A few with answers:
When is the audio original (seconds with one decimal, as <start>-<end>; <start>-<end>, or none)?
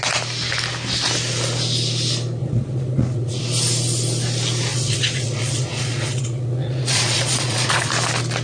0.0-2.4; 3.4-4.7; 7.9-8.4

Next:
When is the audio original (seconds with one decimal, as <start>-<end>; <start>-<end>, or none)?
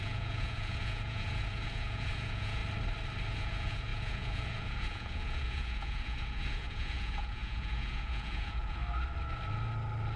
2.6-3.3; 8.8-10.2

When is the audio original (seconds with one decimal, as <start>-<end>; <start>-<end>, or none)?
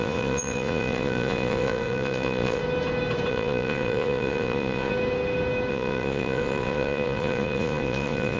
2.6-3.3; 4.9-5.7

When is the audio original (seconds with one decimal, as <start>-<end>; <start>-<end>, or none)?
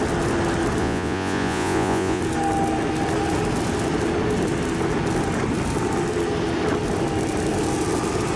0.0-0.8; 2.2-8.4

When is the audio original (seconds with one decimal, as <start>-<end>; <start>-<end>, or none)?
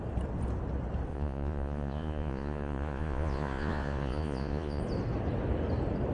0.0-1.1; 4.8-6.1